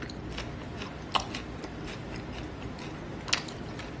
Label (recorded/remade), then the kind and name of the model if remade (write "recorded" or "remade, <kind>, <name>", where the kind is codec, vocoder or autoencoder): recorded